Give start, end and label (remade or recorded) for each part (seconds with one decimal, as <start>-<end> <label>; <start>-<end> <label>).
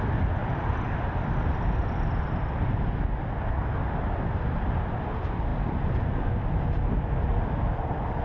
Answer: 0.0-8.2 recorded